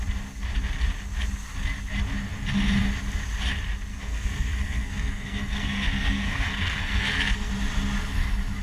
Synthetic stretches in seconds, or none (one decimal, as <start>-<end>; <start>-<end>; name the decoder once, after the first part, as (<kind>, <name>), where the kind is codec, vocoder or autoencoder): 3.9-7.5 (codec, SNAC)